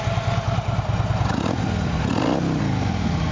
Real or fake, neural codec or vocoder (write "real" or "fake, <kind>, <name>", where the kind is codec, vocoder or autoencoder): real